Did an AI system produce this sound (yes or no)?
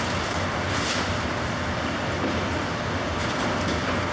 no